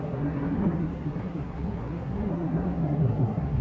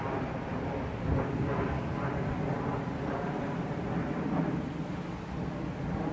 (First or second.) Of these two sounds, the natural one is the second